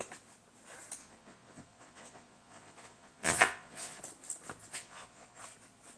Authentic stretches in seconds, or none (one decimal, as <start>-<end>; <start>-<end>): 0.0-1.0; 4.0-4.7; 5.4-6.0